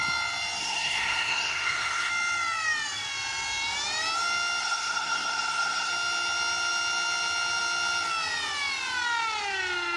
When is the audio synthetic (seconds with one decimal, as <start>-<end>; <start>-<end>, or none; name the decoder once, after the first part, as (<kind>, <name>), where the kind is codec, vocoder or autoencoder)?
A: 0.6-2.1 (codec, SNAC); 4.6-5.9

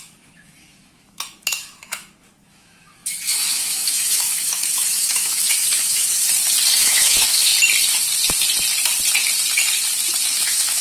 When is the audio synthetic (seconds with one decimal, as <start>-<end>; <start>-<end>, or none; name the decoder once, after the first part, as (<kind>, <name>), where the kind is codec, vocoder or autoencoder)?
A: 0.0-6.2 (autoencoder, DAC-VAE); 6.8-7.5; 10.3-10.8

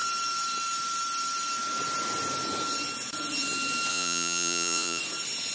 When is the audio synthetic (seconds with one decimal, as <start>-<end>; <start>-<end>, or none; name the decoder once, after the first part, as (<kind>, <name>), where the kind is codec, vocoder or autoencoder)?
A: 3.9-5.0 (vocoder, Vocos)